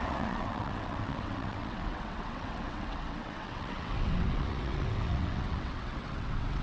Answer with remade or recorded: remade